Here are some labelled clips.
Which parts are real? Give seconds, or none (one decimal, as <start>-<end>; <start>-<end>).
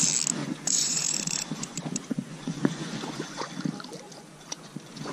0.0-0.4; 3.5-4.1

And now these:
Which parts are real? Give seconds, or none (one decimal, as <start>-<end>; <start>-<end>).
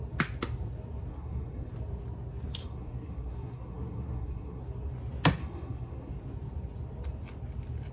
0.0-1.1; 1.7-2.6; 4.6-5.4; 6.1-7.9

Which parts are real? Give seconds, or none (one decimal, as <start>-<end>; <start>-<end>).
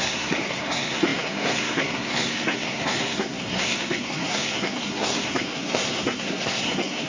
none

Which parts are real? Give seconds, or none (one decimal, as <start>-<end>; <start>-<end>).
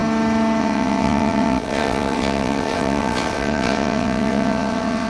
0.0-0.6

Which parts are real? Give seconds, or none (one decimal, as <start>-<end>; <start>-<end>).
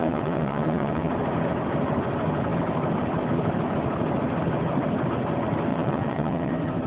1.1-5.7; 6.5-6.9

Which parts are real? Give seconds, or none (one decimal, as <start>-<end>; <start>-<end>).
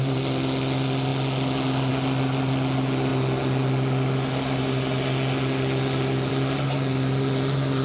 0.0-7.8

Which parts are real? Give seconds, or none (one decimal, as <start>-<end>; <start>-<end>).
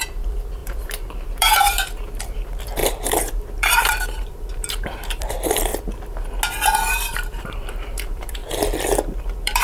5.7-6.9; 8.4-9.2